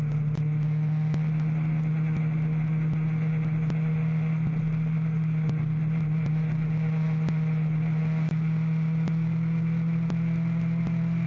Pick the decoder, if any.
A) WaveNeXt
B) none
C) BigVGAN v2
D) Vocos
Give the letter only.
B